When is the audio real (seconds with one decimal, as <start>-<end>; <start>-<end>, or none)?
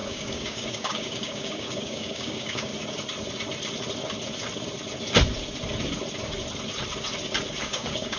2.7-7.6